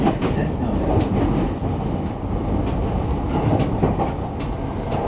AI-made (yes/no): no